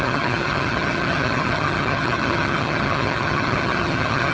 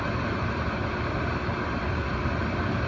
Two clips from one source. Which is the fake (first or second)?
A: first